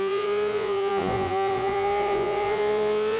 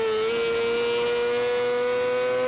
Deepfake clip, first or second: first